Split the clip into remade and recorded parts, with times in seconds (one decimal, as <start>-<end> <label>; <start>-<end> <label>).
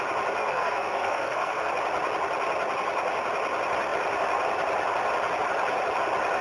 0.0-0.4 recorded; 0.4-1.7 remade; 1.7-6.4 recorded